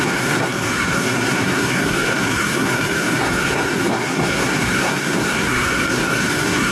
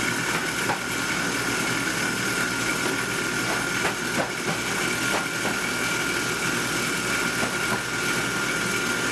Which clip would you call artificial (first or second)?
first